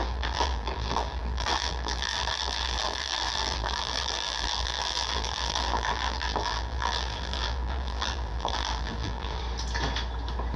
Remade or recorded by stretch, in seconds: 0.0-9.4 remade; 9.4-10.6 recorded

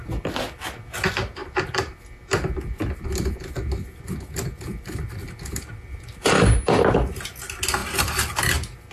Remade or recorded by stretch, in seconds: 0.0-1.4 recorded; 1.4-1.9 remade; 1.9-4.7 recorded; 4.7-7.3 remade; 7.3-7.8 recorded; 7.8-8.9 remade

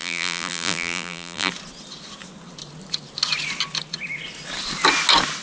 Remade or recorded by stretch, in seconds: 0.0-1.5 remade; 1.5-5.4 recorded

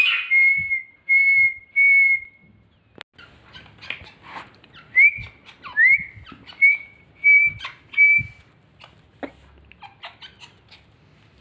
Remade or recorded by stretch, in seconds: 0.0-11.4 recorded

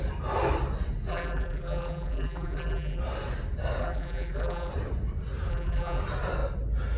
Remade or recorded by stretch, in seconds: 0.0-1.1 recorded; 1.1-3.0 remade; 3.0-3.8 recorded; 3.8-4.7 remade; 4.7-5.5 recorded; 5.5-6.0 remade; 6.0-7.0 recorded

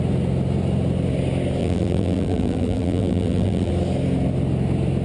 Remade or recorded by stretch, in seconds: 0.0-1.6 recorded; 1.6-3.7 remade; 3.7-5.0 recorded

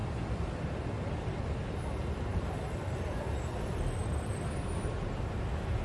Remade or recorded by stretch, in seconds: 0.0-0.8 remade; 0.8-2.3 recorded; 2.3-3.4 remade; 3.4-5.8 recorded